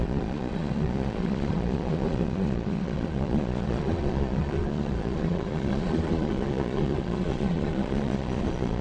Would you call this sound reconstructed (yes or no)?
yes